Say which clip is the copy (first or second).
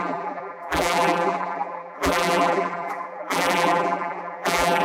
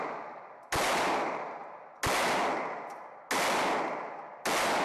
first